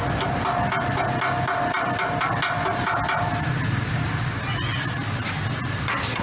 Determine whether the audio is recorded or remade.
recorded